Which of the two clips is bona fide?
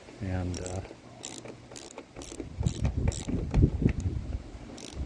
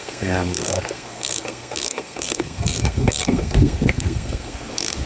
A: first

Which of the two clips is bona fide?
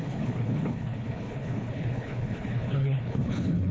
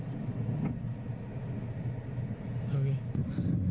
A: second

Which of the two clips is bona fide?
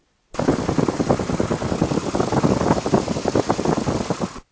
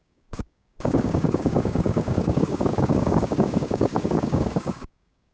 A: first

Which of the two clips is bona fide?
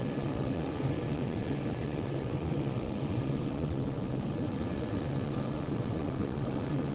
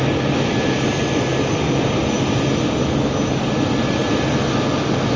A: second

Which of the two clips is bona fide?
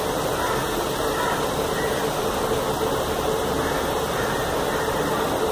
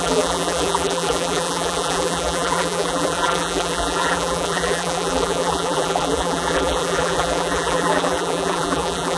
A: first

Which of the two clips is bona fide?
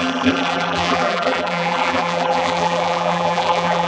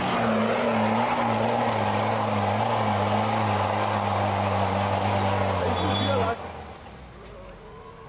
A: second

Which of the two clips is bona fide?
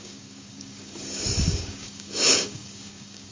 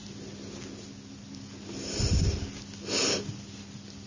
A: second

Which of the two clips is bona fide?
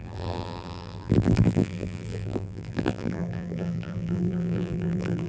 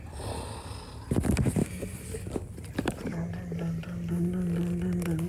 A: second